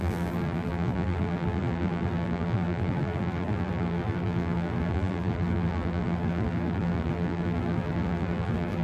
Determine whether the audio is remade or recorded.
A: remade